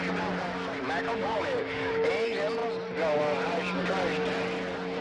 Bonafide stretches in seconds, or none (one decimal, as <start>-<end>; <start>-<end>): 0.0-1.2; 2.1-5.0